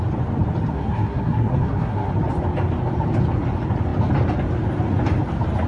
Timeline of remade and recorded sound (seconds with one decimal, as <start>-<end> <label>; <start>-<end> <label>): 0.0-0.7 recorded; 0.7-2.1 remade; 2.1-5.7 recorded